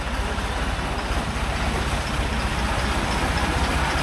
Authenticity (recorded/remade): recorded